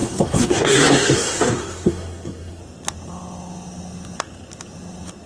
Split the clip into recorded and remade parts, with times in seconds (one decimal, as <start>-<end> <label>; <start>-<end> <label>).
0.0-2.6 remade; 2.6-5.3 recorded